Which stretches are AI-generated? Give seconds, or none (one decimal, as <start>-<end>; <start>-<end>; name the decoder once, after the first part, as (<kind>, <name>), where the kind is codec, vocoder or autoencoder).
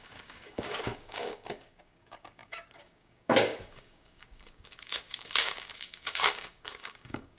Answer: 0.0-7.4 (codec, DAC)